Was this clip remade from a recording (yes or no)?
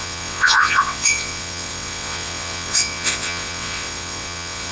yes